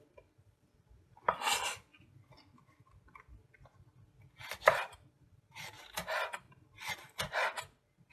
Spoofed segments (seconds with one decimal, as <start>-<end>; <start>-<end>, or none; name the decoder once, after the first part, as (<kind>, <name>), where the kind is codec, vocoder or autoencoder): none